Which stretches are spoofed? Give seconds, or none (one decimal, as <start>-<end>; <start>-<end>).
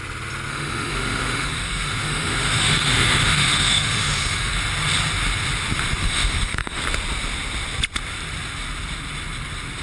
0.5-4.5; 6.0-6.8